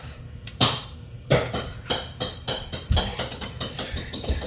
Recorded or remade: remade